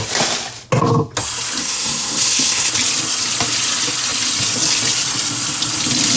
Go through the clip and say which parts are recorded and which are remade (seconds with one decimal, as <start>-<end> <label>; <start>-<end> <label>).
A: 0.0-1.6 recorded; 1.6-2.7 remade; 2.7-6.2 recorded